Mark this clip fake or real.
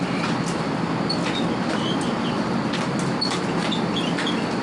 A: real